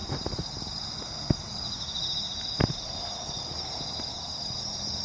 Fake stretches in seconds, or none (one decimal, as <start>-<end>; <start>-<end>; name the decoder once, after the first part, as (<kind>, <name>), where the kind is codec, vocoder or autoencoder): none